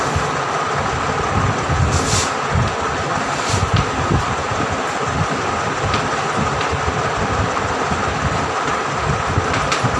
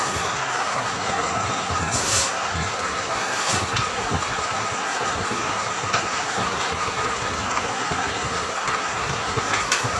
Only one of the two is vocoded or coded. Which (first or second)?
second